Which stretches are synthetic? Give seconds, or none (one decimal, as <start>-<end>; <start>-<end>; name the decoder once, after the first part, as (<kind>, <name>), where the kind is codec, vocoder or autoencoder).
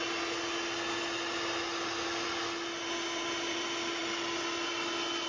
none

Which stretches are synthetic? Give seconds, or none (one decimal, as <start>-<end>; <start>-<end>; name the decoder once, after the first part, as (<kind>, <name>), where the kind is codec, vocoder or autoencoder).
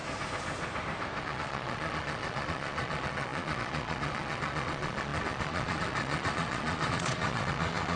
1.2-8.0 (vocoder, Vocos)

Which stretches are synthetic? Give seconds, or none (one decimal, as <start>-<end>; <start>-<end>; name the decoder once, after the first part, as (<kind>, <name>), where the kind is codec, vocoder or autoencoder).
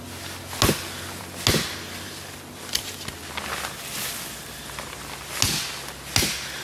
none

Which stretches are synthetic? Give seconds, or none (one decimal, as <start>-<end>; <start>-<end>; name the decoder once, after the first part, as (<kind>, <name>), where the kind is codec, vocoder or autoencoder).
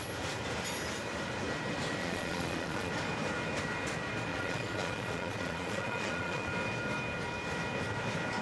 2.0-2.9 (vocoder, Vocos); 4.3-6.5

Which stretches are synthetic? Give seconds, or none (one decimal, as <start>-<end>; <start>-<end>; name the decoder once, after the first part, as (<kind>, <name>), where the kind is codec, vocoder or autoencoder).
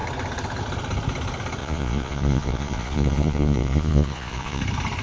1.6-4.6 (vocoder, Vocos)